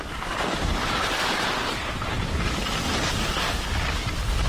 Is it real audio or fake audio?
real